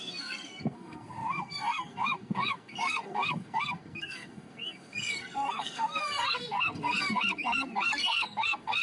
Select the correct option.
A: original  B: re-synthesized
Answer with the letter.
B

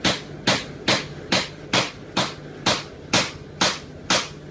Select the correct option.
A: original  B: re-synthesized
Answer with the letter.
A